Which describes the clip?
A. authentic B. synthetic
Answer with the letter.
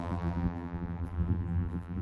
B